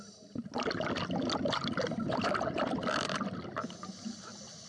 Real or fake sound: real